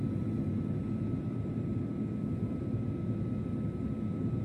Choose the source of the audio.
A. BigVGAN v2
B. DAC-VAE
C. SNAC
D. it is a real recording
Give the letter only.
D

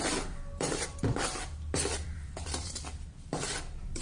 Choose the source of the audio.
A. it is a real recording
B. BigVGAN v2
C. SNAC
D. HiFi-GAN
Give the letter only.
B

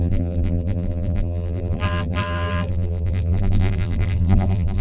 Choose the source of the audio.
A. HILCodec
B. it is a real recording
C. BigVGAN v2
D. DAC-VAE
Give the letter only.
C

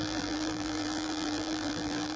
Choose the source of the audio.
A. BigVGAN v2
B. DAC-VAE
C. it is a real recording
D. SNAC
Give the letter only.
A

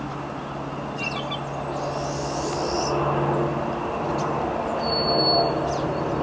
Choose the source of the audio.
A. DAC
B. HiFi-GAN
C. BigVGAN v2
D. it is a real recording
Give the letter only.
D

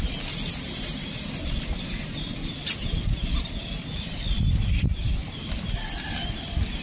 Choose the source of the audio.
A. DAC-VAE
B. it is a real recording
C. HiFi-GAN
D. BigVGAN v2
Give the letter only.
B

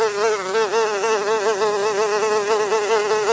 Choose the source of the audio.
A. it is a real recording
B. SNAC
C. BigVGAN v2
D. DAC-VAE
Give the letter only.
A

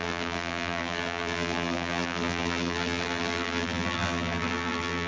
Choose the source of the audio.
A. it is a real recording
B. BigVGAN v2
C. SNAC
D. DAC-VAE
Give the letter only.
B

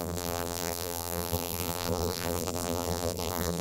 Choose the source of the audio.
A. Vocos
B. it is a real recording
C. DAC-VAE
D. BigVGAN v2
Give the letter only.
D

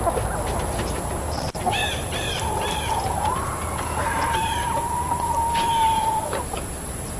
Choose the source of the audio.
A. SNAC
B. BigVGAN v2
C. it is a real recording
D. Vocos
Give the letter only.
B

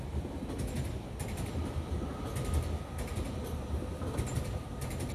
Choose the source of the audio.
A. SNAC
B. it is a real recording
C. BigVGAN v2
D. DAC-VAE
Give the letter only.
B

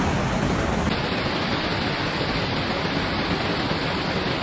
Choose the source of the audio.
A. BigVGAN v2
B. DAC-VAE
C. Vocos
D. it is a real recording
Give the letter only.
D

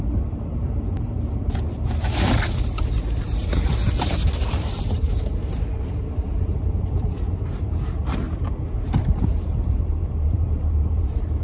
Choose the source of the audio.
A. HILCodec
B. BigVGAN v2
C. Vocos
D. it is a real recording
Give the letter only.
B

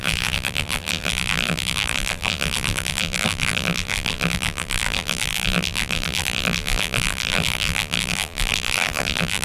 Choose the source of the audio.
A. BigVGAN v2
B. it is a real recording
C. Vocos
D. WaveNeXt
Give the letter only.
A